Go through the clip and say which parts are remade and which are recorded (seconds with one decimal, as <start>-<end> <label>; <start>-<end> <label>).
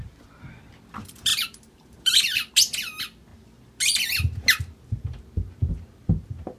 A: 0.0-1.3 recorded; 1.3-2.5 remade; 2.5-6.6 recorded